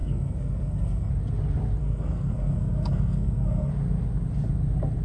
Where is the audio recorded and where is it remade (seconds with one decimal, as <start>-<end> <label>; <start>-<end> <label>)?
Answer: 0.0-1.1 remade; 1.1-1.8 recorded; 1.8-3.7 remade; 3.7-5.0 recorded